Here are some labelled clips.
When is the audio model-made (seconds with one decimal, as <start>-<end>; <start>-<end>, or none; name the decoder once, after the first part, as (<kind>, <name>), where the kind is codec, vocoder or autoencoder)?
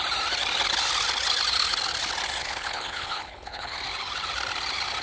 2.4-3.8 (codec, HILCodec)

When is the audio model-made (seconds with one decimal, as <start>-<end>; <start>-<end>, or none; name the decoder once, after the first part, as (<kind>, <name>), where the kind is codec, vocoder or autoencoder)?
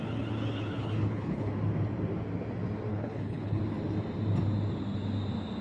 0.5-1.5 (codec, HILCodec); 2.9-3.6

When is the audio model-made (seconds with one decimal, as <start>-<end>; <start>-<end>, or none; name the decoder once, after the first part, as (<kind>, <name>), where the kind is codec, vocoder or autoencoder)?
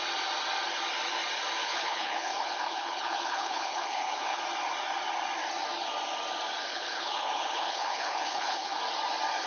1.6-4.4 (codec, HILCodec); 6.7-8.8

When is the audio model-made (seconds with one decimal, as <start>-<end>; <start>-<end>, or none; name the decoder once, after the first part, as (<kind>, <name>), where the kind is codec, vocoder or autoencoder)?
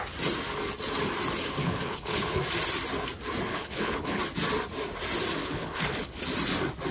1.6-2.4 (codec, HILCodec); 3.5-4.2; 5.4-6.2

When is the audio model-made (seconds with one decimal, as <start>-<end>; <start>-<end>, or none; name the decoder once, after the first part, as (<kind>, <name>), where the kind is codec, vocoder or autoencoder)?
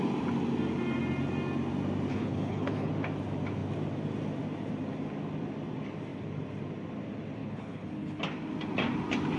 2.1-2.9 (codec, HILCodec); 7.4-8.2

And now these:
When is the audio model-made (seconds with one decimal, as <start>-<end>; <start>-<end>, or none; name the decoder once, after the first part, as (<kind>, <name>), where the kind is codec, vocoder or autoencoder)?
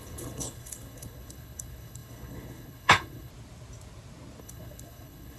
0.0-3.3 (codec, HILCodec); 4.4-5.4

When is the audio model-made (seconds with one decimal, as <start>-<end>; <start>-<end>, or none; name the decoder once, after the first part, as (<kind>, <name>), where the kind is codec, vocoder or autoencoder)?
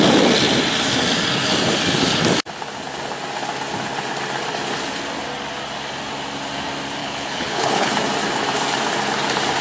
7.0-7.9 (codec, HILCodec)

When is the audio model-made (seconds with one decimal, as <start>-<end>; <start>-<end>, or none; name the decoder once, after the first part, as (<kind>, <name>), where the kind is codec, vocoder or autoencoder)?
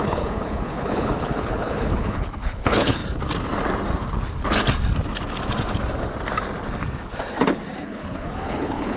0.0-3.0 (codec, HILCodec); 7.8-9.0